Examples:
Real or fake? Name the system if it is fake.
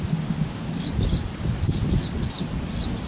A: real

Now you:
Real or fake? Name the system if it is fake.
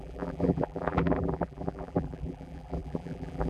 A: fake, vocoder, BigVGAN v2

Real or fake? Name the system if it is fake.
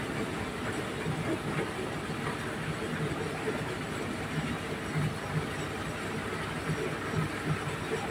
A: real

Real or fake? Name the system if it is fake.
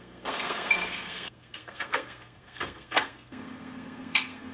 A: fake, codec, SNAC